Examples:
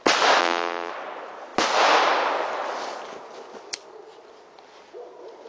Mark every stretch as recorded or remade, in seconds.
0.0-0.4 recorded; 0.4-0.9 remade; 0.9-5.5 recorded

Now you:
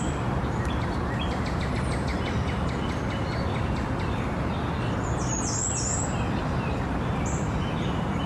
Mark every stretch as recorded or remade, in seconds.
0.0-2.1 remade; 2.1-6.3 recorded; 6.3-8.3 remade

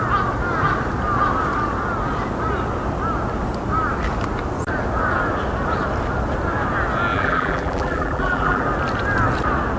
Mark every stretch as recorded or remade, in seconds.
0.0-7.1 recorded; 7.1-8.6 remade; 8.6-9.8 recorded

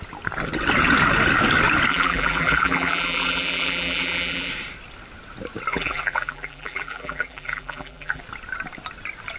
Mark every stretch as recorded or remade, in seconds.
0.0-1.9 recorded; 1.9-4.5 remade; 4.5-5.7 recorded; 5.7-8.2 remade; 8.2-9.4 recorded

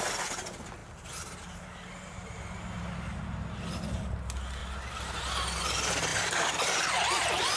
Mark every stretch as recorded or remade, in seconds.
0.0-6.1 recorded; 6.1-7.6 remade

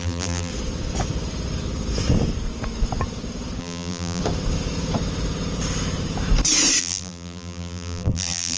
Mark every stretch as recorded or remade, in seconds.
0.0-0.5 remade; 0.5-3.6 recorded; 3.6-4.2 remade; 4.2-6.8 recorded; 6.8-8.6 remade

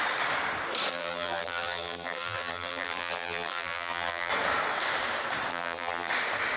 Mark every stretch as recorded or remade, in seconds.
0.0-0.9 recorded; 0.9-4.3 remade; 4.3-5.5 recorded; 5.5-6.1 remade; 6.1-6.6 recorded